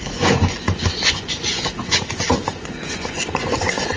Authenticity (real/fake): fake